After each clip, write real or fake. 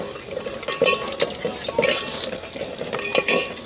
real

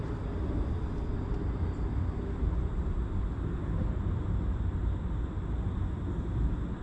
real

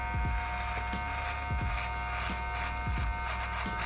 real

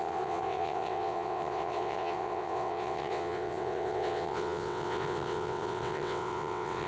fake